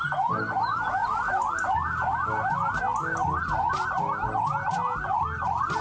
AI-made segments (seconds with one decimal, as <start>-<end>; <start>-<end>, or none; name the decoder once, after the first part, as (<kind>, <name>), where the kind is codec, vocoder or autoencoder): none